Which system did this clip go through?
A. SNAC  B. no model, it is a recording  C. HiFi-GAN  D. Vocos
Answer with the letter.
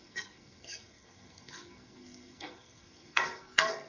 A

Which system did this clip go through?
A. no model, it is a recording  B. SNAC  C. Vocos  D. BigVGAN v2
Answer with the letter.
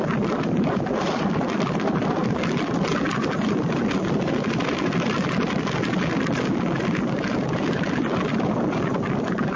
A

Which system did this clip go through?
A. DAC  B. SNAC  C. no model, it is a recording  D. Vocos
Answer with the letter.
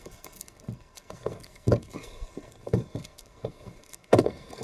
B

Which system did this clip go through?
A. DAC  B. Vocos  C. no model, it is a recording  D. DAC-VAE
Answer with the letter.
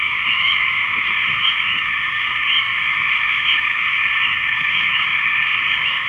D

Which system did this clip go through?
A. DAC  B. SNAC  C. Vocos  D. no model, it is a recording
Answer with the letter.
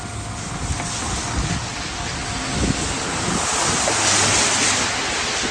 D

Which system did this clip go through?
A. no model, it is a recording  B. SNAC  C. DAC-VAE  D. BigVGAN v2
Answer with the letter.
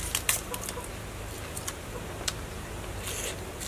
A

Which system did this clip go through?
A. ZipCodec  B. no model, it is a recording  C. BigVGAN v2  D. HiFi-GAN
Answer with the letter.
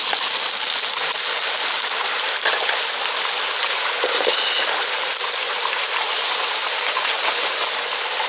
B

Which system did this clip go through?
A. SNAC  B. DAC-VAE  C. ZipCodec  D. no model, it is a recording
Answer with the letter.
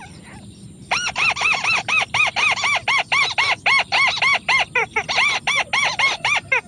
D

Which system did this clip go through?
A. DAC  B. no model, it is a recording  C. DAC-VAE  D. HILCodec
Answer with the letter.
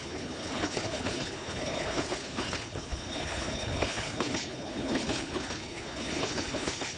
D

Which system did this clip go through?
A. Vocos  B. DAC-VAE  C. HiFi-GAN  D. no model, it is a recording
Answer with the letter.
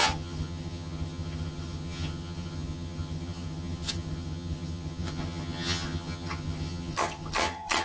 C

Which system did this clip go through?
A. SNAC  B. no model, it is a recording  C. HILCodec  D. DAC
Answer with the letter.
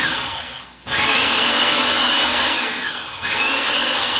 A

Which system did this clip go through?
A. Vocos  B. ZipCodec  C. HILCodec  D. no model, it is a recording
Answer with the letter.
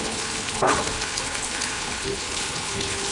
C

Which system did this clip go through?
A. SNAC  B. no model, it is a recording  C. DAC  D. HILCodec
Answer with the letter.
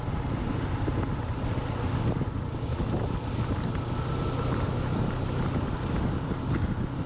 B